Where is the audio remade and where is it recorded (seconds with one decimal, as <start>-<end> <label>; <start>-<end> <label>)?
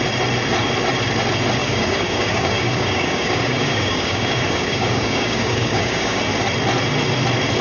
0.0-1.6 recorded; 1.6-6.2 remade; 6.2-7.6 recorded